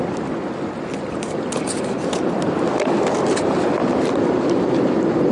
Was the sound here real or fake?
real